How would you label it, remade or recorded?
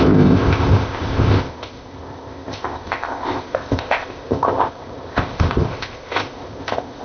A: remade